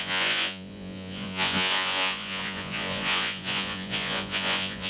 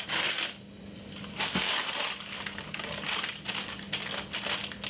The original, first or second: second